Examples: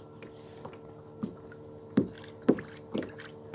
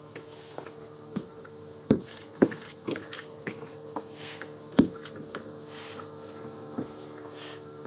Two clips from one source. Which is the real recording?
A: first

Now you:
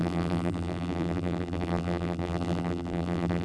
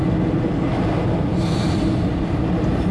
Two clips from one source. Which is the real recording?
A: second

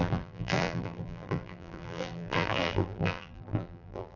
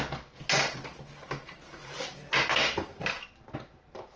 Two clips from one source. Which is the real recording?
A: second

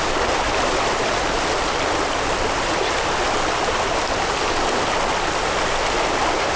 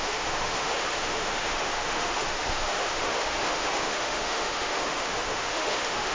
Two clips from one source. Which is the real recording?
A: first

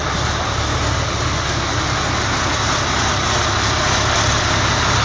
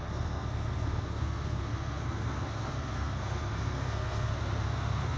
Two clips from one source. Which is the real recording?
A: first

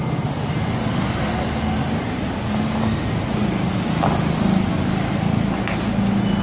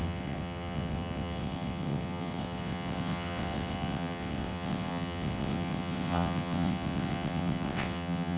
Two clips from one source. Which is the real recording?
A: first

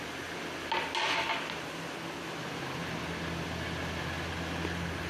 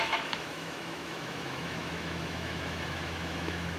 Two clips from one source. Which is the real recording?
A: first